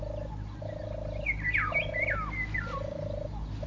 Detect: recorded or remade recorded